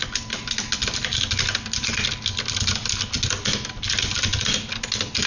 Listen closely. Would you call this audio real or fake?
real